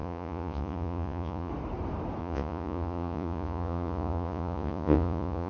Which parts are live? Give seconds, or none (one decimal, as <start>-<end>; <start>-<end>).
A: 1.5-2.2